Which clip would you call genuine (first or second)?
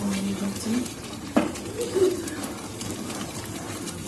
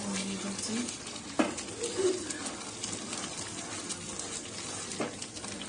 second